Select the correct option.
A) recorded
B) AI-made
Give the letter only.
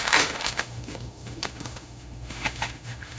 B